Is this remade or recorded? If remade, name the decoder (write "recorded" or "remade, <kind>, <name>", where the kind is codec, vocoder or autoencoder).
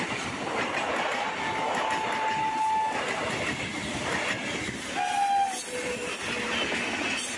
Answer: recorded